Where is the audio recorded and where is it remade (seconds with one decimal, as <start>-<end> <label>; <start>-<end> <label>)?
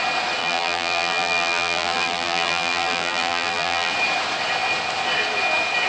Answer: 0.0-0.4 recorded; 0.4-3.9 remade; 3.9-5.9 recorded